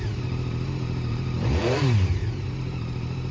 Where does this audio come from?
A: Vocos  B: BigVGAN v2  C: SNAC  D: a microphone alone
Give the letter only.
B